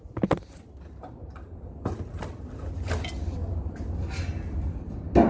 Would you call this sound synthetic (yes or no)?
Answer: no